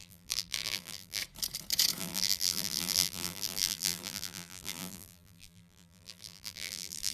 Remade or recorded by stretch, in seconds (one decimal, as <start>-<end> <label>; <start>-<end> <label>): 0.0-1.2 remade; 1.2-2.0 recorded; 2.0-7.1 remade